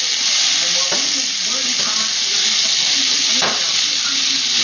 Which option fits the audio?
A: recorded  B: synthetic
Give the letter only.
A